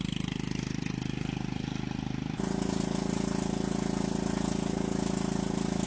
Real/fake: real